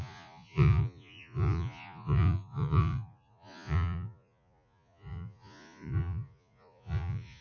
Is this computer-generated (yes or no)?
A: yes